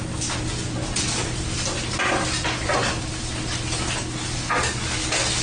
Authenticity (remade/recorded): recorded